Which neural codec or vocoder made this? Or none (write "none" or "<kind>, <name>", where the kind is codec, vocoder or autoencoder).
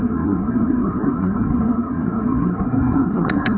codec, SNAC